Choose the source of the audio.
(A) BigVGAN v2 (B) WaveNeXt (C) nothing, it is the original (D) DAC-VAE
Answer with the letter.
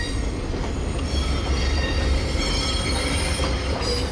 C